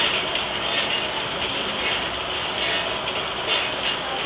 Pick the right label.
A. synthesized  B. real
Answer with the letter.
B